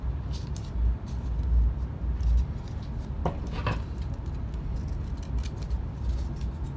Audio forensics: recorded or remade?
recorded